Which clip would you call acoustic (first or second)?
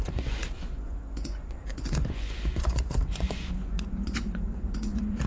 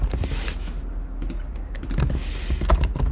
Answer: second